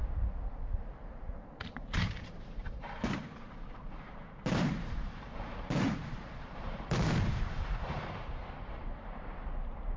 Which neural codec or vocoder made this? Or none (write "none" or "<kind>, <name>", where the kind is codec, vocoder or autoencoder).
vocoder, BigVGAN v2